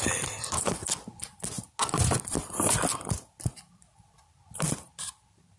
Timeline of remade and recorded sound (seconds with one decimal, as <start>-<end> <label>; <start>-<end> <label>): 0.0-5.6 recorded